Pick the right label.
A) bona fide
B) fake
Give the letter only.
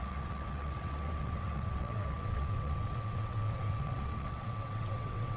B